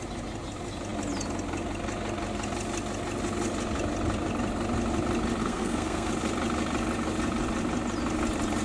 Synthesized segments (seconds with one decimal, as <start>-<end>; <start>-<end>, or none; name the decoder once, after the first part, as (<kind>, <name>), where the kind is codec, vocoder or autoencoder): 5.4-6.1 (codec, SNAC)